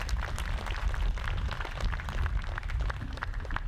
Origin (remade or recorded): recorded